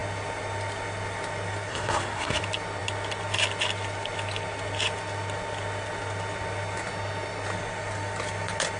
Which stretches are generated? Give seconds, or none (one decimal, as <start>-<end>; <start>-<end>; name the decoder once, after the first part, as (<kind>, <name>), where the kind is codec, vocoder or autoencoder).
1.7-2.4 (codec, SNAC)